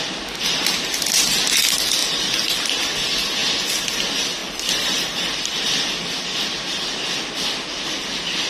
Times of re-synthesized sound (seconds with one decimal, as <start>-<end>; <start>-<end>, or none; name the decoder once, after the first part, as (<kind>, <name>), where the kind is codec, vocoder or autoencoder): 2.0-2.8 (vocoder, BigVGAN v2); 4.4-5.4